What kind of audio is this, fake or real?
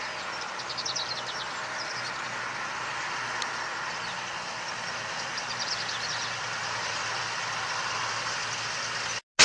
real